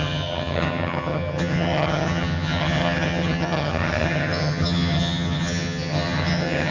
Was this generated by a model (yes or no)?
yes